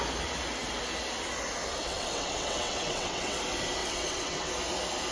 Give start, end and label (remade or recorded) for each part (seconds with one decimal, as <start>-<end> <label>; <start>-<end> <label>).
0.0-1.8 recorded; 1.8-3.4 remade; 3.4-3.8 recorded; 3.8-4.5 remade; 4.5-5.1 recorded